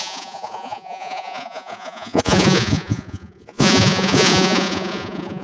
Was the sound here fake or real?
fake